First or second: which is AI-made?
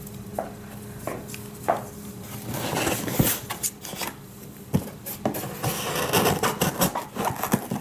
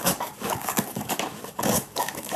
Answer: second